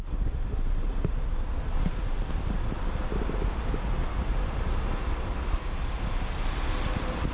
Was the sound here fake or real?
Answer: real